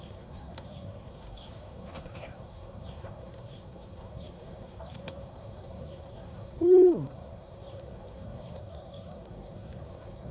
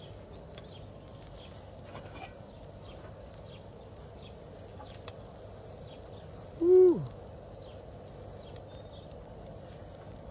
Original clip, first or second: second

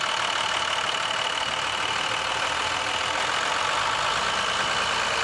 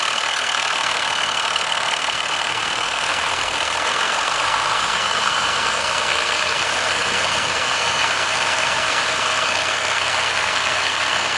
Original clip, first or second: first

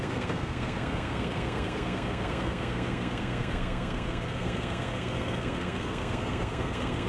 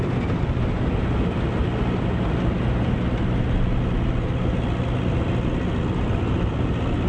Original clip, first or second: second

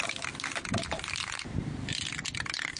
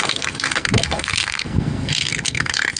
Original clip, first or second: first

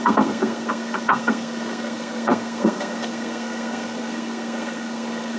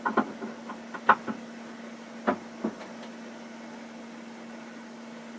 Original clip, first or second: second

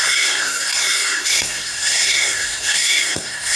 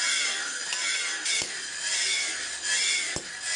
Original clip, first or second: second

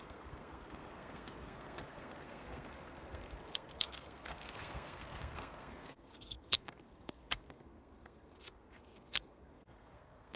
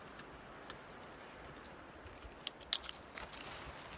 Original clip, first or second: second